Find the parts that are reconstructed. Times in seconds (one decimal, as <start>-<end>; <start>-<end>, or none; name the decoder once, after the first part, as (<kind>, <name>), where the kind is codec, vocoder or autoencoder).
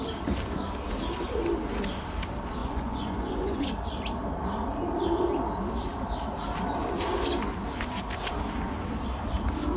2.6-3.7 (vocoder, Vocos)